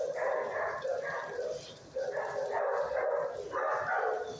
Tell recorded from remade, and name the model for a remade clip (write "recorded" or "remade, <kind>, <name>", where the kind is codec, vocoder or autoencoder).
recorded